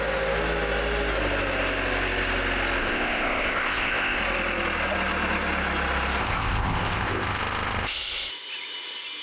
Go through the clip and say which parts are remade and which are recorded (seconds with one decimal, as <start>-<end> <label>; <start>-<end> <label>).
0.0-2.8 recorded; 2.8-4.2 remade; 4.2-6.2 recorded; 6.2-8.3 remade; 8.3-9.2 recorded